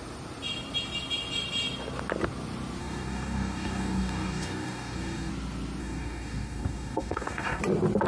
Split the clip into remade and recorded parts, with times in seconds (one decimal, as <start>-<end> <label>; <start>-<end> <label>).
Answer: 0.0-2.8 recorded; 2.8-5.3 remade; 5.3-5.8 recorded; 5.8-7.6 remade; 7.6-8.1 recorded

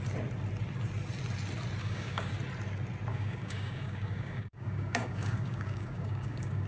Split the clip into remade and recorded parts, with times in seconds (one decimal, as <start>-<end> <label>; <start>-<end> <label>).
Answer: 0.0-1.8 recorded; 1.8-2.3 remade; 2.3-3.1 recorded; 3.1-6.7 remade

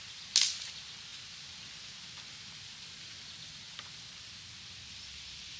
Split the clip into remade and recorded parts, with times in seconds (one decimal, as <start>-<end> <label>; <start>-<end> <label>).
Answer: 0.0-5.6 recorded